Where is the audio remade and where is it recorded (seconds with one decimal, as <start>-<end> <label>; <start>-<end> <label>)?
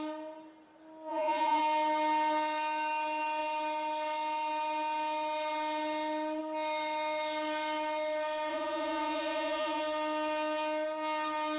0.0-1.1 recorded; 1.1-1.6 remade; 1.6-8.5 recorded; 8.5-9.8 remade; 9.8-11.6 recorded